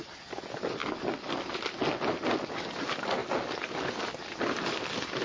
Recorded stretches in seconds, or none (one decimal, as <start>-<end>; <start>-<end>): 0.0-5.2